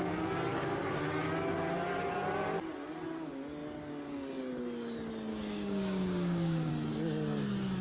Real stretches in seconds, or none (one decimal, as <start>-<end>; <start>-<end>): 0.0-0.5; 1.0-5.3; 6.7-7.8

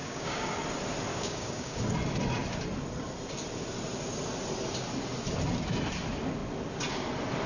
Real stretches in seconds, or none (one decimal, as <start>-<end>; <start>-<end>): 0.6-1.1; 1.8-7.5

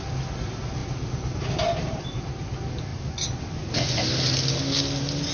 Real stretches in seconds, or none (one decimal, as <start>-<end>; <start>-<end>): 0.0-5.3

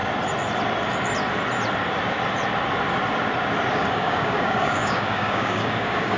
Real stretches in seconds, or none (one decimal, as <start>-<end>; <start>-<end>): 0.0-3.7